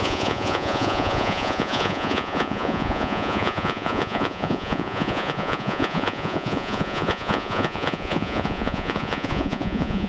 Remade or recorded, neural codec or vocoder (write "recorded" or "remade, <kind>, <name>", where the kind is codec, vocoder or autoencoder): remade, vocoder, Vocos